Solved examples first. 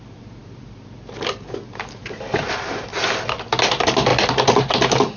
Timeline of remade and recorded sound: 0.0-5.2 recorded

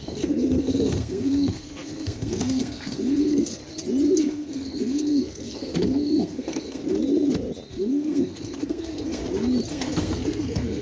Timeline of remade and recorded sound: 0.0-3.6 remade; 3.6-4.2 recorded; 4.2-6.8 remade; 6.8-7.7 recorded; 7.7-9.2 remade; 9.2-9.7 recorded; 9.7-10.8 remade

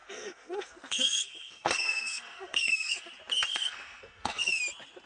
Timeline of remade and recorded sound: 0.0-3.1 remade; 3.1-3.5 recorded; 3.5-4.5 remade; 4.5-5.1 recorded

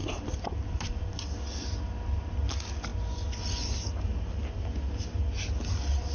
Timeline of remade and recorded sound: 0.0-6.1 recorded

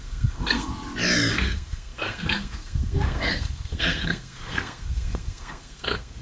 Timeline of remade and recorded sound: 0.0-0.7 remade; 0.7-1.3 recorded; 1.3-6.2 remade

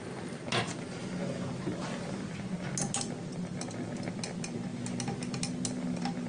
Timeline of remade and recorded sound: 0.0-6.3 recorded

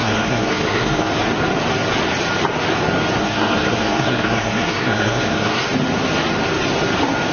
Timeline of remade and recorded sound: 0.0-1.1 remade; 1.1-3.2 recorded; 3.2-5.6 remade; 5.6-7.3 recorded